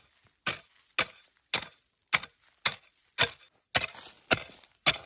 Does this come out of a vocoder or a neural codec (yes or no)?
no